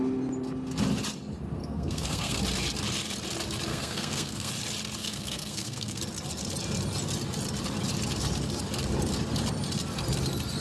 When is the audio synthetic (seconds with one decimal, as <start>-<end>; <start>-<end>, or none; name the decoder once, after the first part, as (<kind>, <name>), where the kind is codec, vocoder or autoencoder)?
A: 1.6-2.4 (codec, SNAC); 3.7-4.5; 5.0-6.0